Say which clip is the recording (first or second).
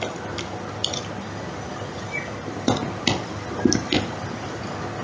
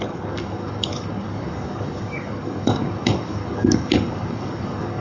first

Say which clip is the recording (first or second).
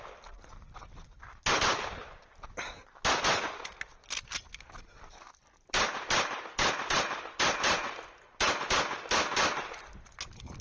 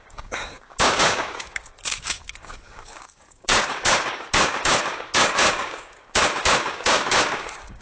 first